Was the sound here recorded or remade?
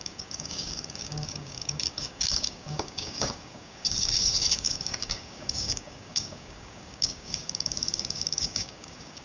remade